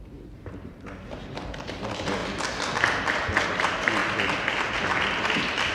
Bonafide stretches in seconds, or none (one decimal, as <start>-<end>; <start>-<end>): 2.2-3.5; 4.0-4.7